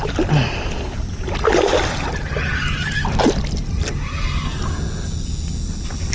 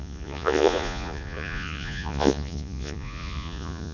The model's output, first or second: second